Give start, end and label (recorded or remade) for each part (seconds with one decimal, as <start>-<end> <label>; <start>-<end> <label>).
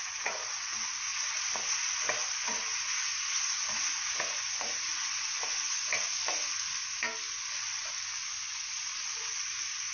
0.0-4.9 remade; 4.9-8.4 recorded; 8.4-9.9 remade